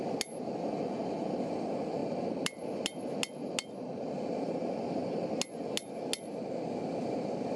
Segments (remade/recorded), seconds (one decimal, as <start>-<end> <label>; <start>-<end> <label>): 0.0-7.6 recorded